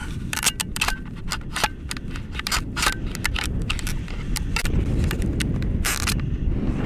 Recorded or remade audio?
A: recorded